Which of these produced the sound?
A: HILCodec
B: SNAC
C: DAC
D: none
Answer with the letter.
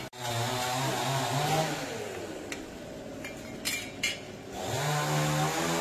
D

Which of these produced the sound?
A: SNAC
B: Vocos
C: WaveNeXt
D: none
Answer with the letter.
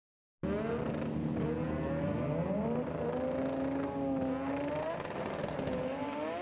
D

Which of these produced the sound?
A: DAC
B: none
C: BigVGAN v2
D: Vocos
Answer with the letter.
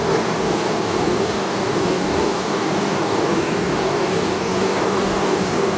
A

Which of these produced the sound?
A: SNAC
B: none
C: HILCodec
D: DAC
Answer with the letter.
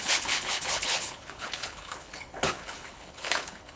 C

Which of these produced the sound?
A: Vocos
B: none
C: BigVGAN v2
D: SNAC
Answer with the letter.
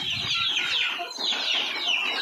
B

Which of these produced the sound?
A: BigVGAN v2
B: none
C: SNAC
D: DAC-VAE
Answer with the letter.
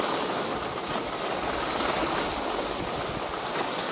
B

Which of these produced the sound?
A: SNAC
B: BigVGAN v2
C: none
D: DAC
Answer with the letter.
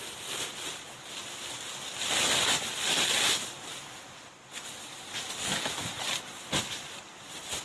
B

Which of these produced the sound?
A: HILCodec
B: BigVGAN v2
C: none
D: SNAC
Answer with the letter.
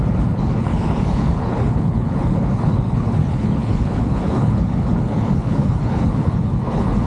A